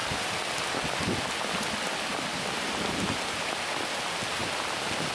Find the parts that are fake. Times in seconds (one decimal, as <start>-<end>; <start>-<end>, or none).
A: 2.3-3.6